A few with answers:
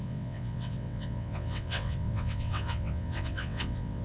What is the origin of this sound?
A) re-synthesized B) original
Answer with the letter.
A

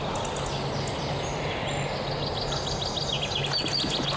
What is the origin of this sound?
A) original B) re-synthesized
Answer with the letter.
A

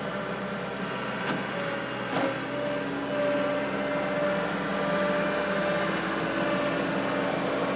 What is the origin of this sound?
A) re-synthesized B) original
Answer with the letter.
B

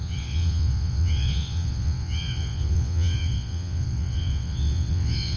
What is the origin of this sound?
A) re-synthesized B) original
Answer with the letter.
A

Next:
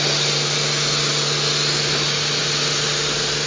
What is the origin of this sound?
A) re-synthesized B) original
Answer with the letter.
B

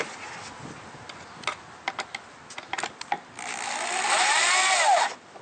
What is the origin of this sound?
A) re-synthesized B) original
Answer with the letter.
B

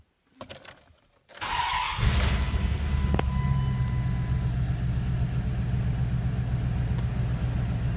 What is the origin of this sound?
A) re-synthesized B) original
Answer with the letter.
B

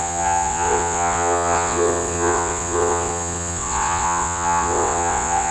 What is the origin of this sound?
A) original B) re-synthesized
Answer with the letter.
B